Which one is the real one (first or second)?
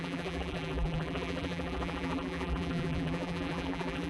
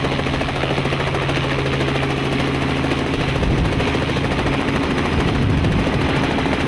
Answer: second